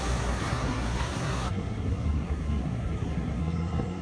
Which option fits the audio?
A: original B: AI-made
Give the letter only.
B